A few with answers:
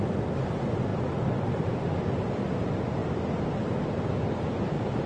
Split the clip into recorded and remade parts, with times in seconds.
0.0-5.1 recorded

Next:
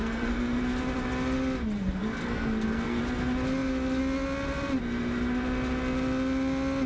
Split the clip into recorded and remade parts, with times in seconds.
0.0-0.6 remade; 0.6-2.2 recorded; 2.2-3.0 remade; 3.0-6.9 recorded

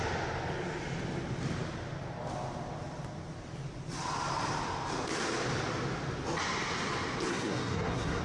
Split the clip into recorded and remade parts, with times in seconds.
0.0-7.3 recorded; 7.3-8.2 remade

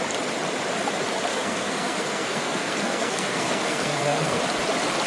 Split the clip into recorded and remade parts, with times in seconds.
0.0-1.3 recorded; 1.3-4.4 remade; 4.4-5.1 recorded

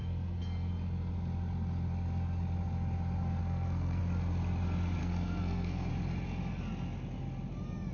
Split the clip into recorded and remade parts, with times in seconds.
0.0-0.7 remade; 0.7-3.4 recorded; 3.4-4.0 remade; 4.0-5.0 recorded; 5.0-5.9 remade; 5.9-7.9 recorded

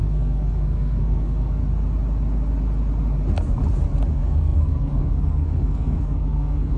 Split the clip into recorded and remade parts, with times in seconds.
0.0-1.6 remade; 1.6-4.1 recorded; 4.1-6.8 remade

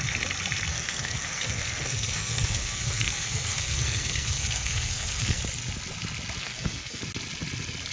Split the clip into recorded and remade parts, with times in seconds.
0.0-0.7 recorded; 0.7-5.4 remade; 5.4-6.4 recorded; 6.4-7.0 remade; 7.0-7.9 recorded